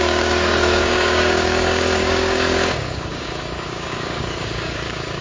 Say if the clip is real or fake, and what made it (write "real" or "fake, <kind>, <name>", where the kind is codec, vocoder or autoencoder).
fake, codec, DAC